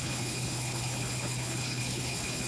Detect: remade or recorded remade